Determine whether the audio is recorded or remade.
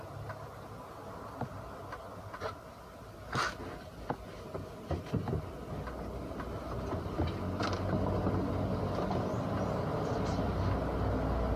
recorded